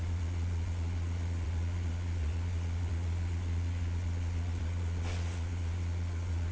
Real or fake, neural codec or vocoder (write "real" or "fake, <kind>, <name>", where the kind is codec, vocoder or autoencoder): fake, vocoder, Vocos